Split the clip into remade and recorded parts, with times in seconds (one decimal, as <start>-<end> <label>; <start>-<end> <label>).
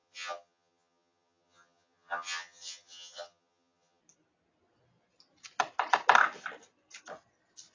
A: 0.0-4.0 remade; 4.0-7.7 recorded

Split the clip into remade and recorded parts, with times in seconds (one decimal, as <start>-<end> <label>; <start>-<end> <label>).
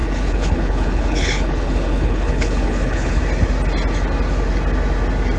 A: 0.0-3.2 remade; 3.2-5.4 recorded